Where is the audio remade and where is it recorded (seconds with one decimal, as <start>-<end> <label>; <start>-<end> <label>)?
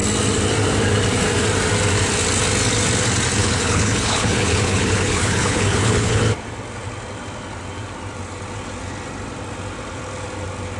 0.0-3.4 recorded; 3.4-6.2 remade; 6.2-10.8 recorded